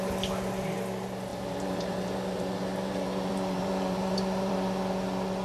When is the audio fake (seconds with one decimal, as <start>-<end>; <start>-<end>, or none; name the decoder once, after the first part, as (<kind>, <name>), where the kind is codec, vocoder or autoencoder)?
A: 1.3-4.5 (vocoder, BigVGAN v2)